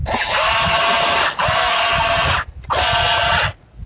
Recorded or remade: recorded